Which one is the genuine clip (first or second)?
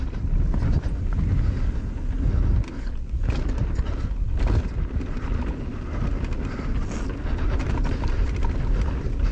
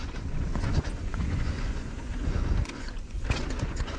first